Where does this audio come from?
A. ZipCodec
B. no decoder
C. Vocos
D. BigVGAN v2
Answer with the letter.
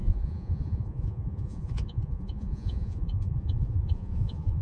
C